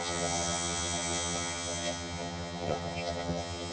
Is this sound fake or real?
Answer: fake